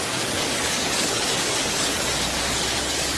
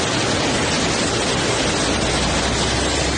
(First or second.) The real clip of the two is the second